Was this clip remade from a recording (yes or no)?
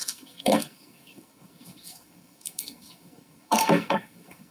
yes